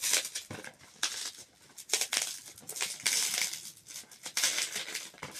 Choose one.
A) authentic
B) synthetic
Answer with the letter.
A